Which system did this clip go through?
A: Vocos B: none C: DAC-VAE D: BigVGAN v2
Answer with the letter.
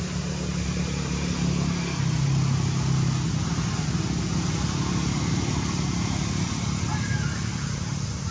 B